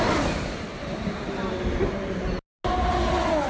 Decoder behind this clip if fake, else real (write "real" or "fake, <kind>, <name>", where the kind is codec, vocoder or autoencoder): real